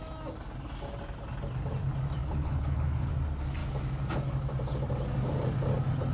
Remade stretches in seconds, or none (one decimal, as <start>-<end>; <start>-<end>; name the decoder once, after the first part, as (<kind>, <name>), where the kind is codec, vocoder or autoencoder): 2.2-3.1 (codec, HILCodec)